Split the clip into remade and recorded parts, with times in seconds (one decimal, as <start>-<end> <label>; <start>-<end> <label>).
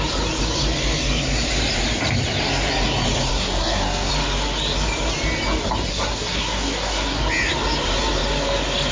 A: 0.0-3.3 recorded; 3.3-4.1 remade; 4.1-5.9 recorded; 5.9-7.2 remade; 7.2-8.9 recorded